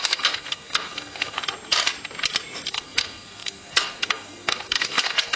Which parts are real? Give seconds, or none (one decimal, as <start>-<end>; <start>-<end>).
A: 1.4-2.7